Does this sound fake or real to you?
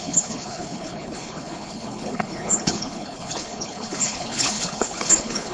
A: fake